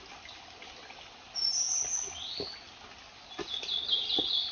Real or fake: real